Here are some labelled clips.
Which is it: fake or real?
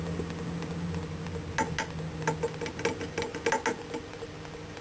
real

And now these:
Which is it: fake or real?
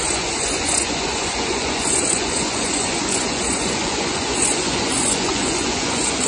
fake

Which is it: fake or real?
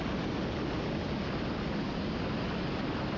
real